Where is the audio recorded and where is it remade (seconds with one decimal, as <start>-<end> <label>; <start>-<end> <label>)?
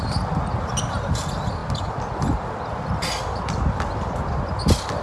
0.0-5.0 recorded